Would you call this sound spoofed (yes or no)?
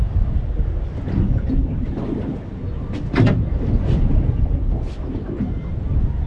no